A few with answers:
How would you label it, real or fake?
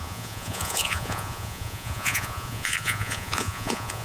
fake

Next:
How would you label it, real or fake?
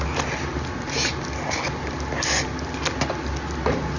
real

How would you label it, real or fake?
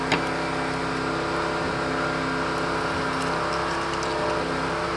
real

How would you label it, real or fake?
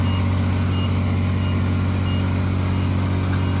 real